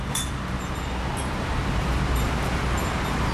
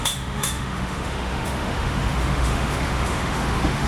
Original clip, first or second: first